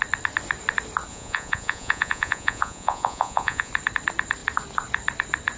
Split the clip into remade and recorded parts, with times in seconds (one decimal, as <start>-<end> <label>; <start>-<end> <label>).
0.0-1.1 recorded; 1.1-3.7 remade; 3.7-5.6 recorded